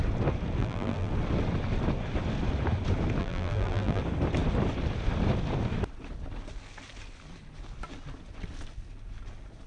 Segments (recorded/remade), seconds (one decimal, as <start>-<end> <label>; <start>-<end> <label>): 0.0-0.6 recorded; 0.6-1.1 remade; 1.1-3.2 recorded; 3.2-4.0 remade; 4.0-9.7 recorded